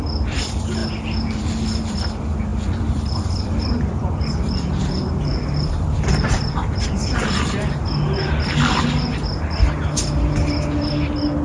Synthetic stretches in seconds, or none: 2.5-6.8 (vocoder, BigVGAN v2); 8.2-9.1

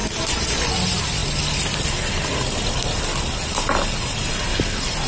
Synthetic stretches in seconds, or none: 0.0-0.7 (vocoder, BigVGAN v2)

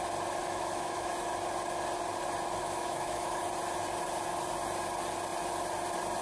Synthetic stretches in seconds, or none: 0.4-1.1 (autoencoder, DAC-VAE); 2.6-3.4

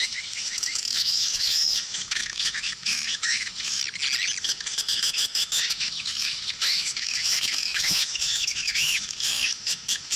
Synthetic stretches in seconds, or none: 0.0-3.8 (autoencoder, DAC-VAE); 4.4-10.2